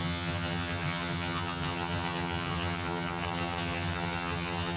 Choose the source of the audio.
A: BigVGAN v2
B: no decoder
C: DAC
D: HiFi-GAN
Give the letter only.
D